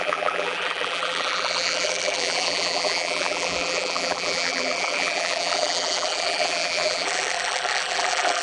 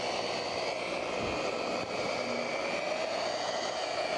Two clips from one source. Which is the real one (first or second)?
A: second